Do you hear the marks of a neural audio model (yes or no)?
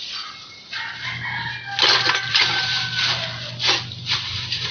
no